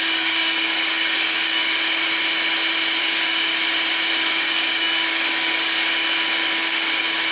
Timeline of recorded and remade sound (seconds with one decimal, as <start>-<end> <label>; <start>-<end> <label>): 0.0-1.6 remade; 1.6-3.0 recorded; 3.0-3.5 remade; 3.5-4.1 recorded; 4.1-5.8 remade; 5.8-6.4 recorded; 6.4-7.3 remade